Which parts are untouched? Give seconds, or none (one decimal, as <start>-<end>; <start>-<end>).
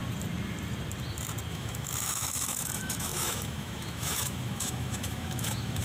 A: 0.0-1.5